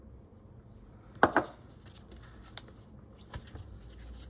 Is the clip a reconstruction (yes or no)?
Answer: no